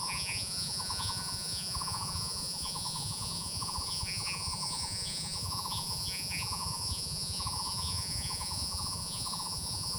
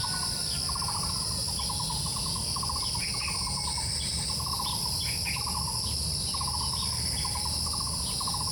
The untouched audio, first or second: second